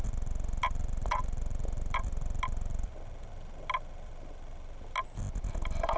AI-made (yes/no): no